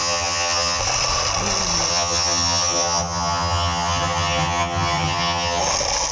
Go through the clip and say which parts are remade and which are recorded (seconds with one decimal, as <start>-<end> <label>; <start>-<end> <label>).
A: 0.0-0.8 remade; 0.8-1.9 recorded; 1.9-5.6 remade; 5.6-6.1 recorded